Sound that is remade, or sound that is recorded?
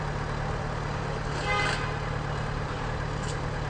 recorded